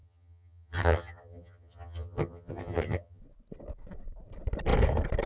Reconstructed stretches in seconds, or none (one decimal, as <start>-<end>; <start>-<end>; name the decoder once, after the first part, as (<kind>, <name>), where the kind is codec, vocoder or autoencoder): 0.0-3.2 (vocoder, HiFi-GAN)